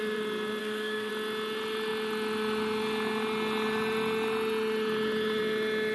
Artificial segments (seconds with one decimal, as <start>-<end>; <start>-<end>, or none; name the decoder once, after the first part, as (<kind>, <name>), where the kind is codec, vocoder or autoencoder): 0.6-1.1 (codec, SNAC)